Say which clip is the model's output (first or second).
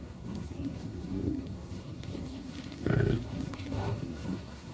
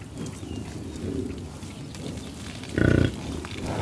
first